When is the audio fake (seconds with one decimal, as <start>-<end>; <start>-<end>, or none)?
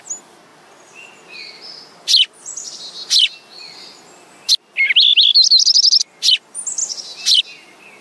none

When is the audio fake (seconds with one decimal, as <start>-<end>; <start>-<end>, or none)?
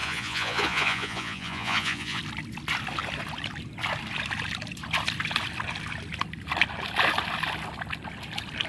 0.0-2.2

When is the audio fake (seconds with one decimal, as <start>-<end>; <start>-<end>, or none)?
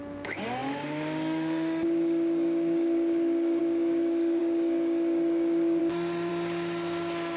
0.0-6.3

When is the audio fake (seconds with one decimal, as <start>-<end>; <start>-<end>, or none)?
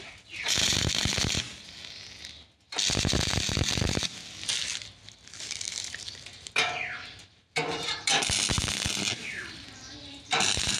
0.0-1.0; 5.3-8.1; 9.3-10.8